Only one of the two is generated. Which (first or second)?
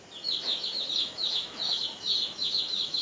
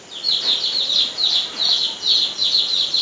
first